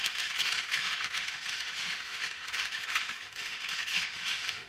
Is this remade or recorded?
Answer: remade